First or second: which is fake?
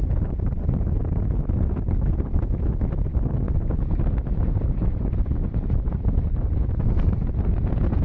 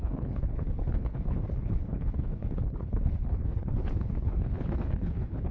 second